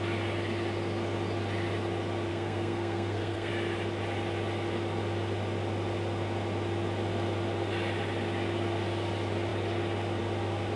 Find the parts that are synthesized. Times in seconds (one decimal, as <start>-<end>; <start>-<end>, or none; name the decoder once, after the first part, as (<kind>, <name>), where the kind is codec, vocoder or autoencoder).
2.3-3.5 (codec, SNAC)